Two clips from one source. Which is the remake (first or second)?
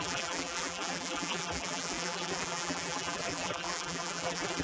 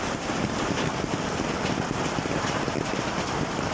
first